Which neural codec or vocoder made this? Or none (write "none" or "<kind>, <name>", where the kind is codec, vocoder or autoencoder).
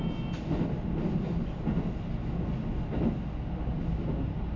none